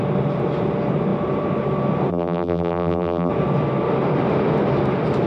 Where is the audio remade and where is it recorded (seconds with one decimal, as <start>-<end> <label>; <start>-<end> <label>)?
0.0-2.1 recorded; 2.1-3.3 remade; 3.3-5.3 recorded